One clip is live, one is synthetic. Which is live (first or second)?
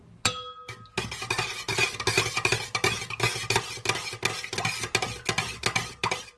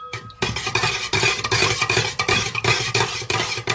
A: first